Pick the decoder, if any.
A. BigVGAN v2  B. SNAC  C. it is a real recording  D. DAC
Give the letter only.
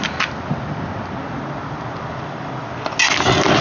C